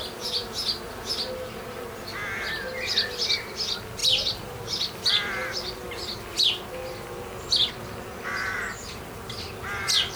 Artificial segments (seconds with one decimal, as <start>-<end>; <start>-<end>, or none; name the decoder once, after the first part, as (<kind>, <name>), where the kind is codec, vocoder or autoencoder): 4.0-7.7 (vocoder, BigVGAN v2)

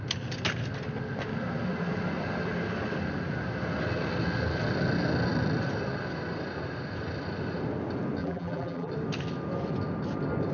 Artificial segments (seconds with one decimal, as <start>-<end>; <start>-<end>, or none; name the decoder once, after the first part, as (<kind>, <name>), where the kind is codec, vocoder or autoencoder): 8.2-8.9 (vocoder, BigVGAN v2)